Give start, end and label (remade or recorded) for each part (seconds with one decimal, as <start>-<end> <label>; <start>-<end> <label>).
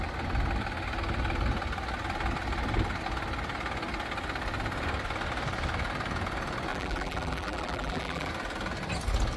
0.0-6.7 recorded; 6.7-8.3 remade; 8.3-9.4 recorded